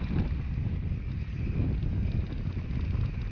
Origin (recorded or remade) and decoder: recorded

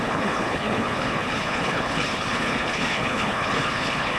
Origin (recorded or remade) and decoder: remade, codec, HILCodec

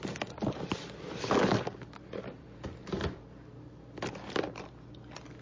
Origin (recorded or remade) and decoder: recorded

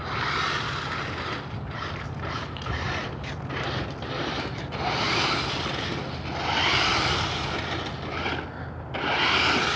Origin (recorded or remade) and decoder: recorded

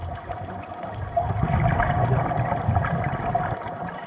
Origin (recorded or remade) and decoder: recorded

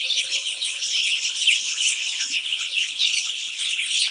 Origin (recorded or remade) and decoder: remade, codec, HILCodec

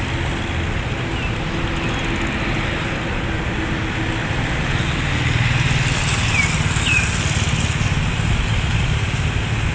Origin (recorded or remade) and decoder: recorded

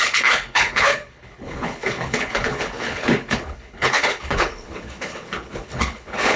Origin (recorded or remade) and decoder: remade, codec, HILCodec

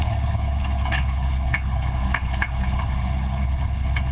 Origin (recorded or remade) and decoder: remade, codec, HILCodec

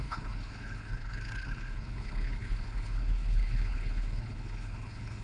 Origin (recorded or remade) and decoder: remade, codec, HILCodec